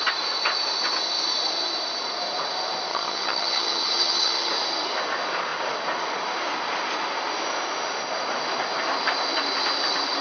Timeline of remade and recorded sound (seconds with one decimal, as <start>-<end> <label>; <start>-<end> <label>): 0.0-2.9 recorded; 2.9-4.5 remade; 4.5-10.2 recorded